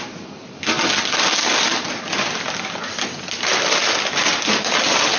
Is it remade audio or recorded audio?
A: recorded